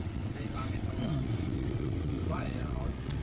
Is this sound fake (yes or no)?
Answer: yes